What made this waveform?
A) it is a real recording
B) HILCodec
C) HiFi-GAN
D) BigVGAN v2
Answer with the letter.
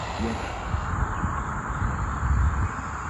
A